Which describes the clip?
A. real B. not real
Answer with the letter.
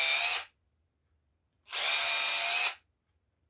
A